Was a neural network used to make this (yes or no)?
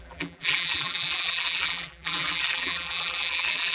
yes